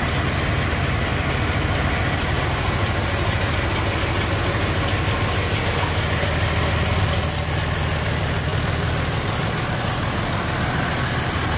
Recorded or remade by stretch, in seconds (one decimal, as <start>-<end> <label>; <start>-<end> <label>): 0.0-11.6 recorded

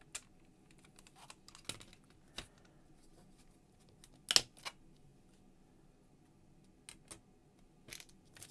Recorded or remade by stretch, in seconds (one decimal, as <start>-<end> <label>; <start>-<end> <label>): 0.0-8.5 recorded

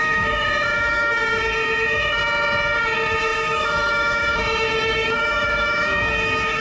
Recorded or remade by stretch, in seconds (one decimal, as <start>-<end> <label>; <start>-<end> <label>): 0.0-2.2 remade; 2.2-2.8 recorded; 2.8-6.6 remade

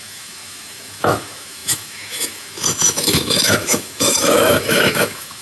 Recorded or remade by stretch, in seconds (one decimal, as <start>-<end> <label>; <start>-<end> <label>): 0.0-5.4 remade

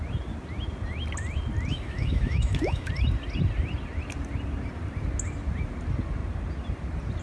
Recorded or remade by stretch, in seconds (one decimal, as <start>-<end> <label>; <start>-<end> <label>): 0.0-1.7 recorded; 1.7-2.9 remade; 2.9-7.2 recorded

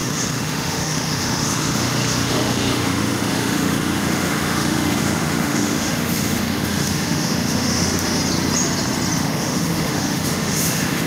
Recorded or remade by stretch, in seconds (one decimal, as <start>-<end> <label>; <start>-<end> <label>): 0.0-8.2 remade; 8.2-9.2 recorded; 9.2-11.1 remade

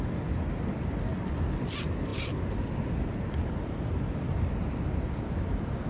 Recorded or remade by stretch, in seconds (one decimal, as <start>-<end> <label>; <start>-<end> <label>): 0.0-5.9 recorded